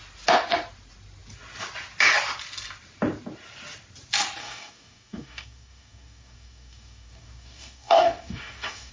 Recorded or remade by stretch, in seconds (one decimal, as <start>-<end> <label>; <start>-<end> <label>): 0.0-4.4 recorded; 4.4-8.9 remade